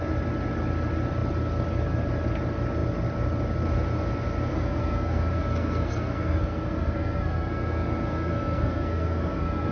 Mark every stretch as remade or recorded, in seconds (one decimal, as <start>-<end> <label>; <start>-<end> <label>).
0.0-4.5 recorded; 4.5-9.7 remade